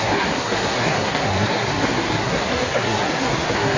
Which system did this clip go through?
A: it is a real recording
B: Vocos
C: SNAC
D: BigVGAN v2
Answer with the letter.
C